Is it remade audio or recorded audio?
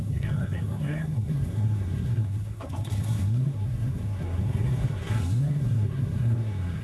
remade